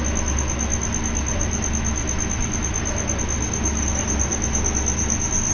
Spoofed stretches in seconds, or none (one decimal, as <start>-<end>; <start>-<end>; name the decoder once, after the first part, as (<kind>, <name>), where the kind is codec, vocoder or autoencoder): 1.3-3.2 (vocoder, BigVGAN v2)